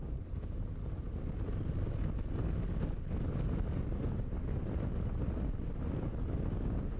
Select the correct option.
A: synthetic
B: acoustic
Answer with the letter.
B